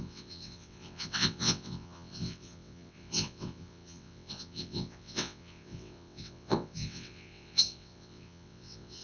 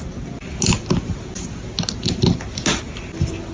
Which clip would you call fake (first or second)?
first